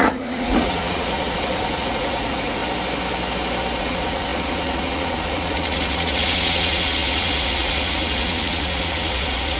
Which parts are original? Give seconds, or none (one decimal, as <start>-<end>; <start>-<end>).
2.6-3.8